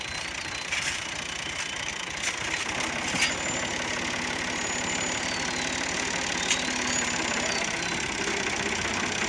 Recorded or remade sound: recorded